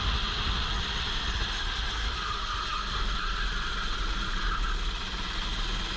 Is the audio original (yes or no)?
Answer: yes